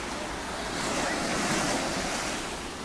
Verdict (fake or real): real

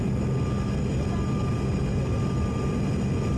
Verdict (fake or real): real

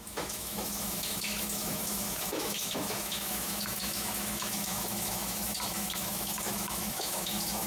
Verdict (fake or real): fake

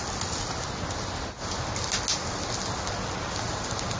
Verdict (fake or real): real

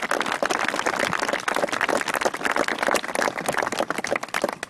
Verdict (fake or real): real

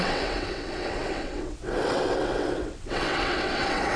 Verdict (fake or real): fake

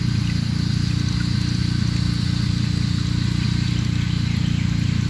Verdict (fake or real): real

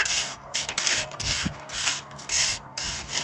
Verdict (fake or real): fake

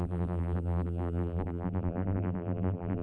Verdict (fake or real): fake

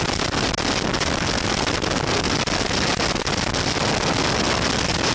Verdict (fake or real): real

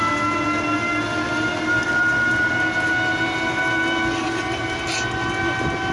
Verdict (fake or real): real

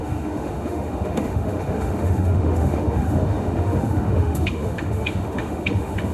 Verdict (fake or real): fake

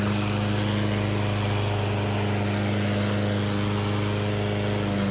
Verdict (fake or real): real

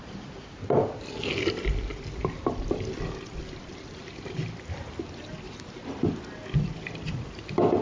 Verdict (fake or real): real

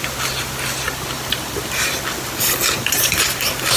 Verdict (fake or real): real